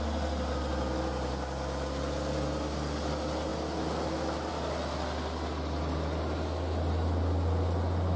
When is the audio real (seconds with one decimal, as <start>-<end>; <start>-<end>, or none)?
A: 0.0-8.2